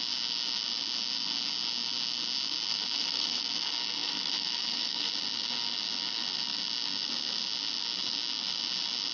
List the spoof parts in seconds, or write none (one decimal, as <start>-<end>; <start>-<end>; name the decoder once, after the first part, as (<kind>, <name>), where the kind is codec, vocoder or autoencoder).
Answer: 2.7-3.4 (autoencoder, DAC-VAE); 4.0-5.1